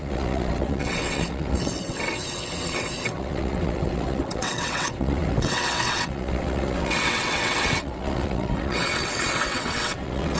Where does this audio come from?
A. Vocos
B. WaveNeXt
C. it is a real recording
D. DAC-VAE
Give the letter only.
B